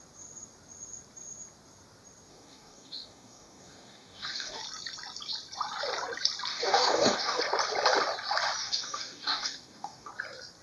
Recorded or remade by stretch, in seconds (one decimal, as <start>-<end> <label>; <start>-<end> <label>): 0.0-2.3 recorded; 2.3-4.6 remade; 4.6-6.5 recorded; 6.5-7.4 remade; 7.4-8.6 recorded; 8.6-10.1 remade; 10.1-10.6 recorded